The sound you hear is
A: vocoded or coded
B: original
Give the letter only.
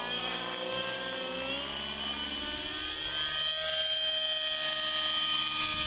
B